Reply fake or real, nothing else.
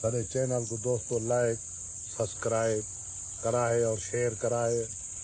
real